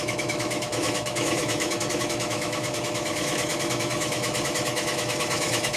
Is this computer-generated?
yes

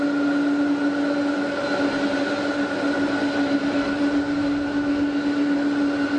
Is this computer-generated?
no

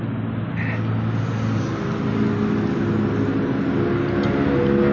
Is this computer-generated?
no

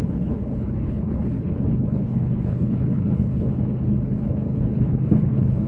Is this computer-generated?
yes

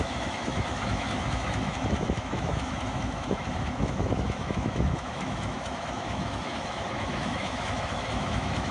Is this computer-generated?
yes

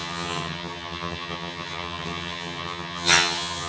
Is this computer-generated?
yes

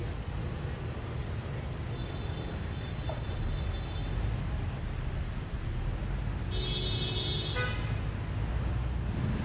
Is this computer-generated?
no